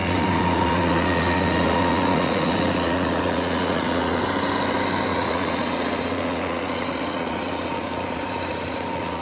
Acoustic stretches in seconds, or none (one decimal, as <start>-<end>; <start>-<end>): 4.2-5.1